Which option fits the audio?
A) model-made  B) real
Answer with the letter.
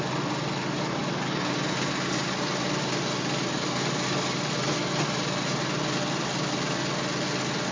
B